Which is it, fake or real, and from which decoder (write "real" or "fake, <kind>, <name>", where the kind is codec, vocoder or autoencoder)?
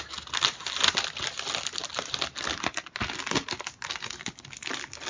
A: real